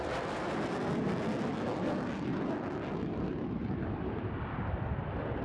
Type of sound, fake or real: real